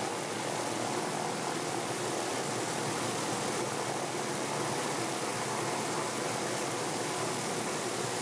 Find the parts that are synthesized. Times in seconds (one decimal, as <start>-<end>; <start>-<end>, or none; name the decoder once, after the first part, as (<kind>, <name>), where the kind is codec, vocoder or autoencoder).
none